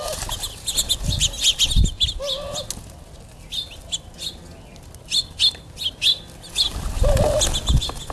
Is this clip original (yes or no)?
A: yes